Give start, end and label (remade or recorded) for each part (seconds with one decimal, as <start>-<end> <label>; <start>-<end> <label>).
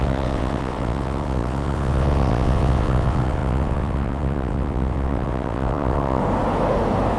0.0-6.2 remade; 6.2-7.2 recorded